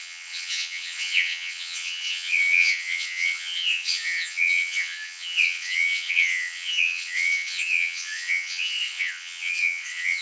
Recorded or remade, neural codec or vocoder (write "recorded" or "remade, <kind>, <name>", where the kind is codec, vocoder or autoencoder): remade, vocoder, WaveNeXt